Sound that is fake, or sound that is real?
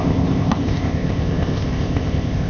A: fake